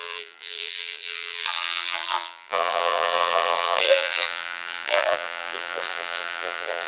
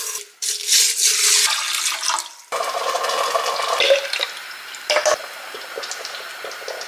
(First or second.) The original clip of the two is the second